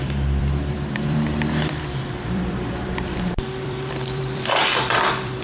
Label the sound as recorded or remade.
remade